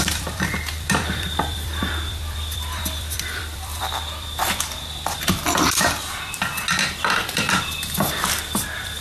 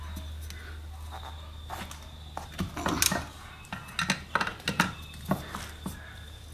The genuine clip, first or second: second